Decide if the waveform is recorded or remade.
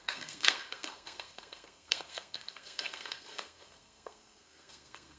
remade